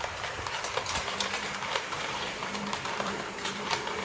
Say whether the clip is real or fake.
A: fake